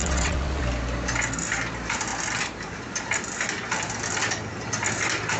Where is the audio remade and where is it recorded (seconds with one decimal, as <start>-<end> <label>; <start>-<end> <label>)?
0.0-0.6 remade; 0.6-5.4 recorded